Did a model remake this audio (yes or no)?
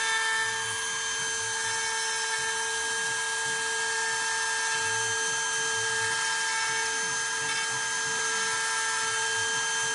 no